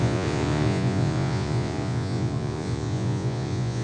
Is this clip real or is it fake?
fake